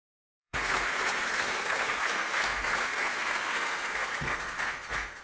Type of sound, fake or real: fake